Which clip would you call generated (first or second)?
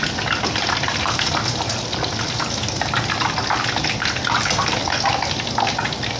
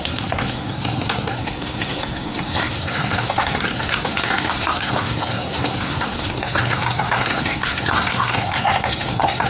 second